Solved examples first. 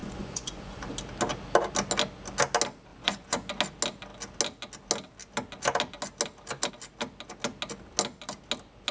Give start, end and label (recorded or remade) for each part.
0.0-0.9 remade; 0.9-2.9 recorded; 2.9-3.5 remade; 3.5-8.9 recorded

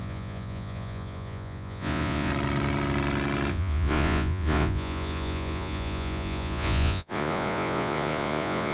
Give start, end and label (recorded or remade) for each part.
0.0-2.3 remade; 2.3-3.5 recorded; 3.5-8.7 remade

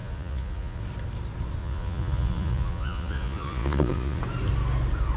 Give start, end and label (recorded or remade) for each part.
0.0-0.8 remade; 0.8-1.6 recorded; 1.6-4.2 remade; 4.2-5.2 recorded

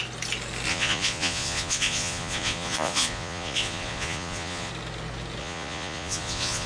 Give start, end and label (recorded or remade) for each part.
0.0-0.7 recorded; 0.7-4.7 remade; 4.7-5.4 recorded; 5.4-6.7 remade

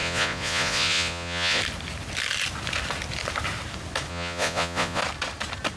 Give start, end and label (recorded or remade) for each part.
0.0-1.6 remade; 1.6-4.1 recorded; 4.1-5.0 remade; 5.0-5.8 recorded

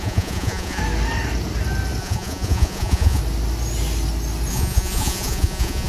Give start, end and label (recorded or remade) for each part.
0.0-0.8 remade; 0.8-2.0 recorded; 2.0-3.2 remade; 3.2-4.5 recorded; 4.5-5.9 remade